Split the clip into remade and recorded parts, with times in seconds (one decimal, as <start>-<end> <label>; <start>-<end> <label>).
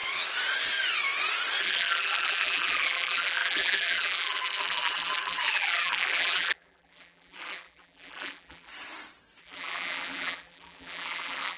0.0-1.6 recorded; 1.6-8.7 remade; 8.7-9.4 recorded; 9.4-11.6 remade